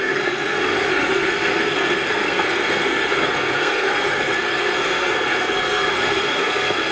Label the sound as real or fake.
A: fake